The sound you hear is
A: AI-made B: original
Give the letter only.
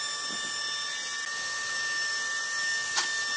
B